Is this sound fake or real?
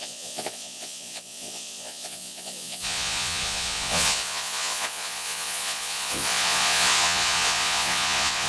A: fake